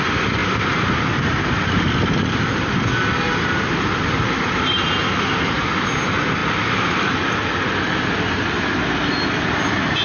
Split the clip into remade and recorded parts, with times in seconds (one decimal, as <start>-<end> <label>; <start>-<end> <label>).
0.0-10.0 recorded